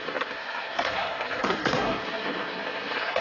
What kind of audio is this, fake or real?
fake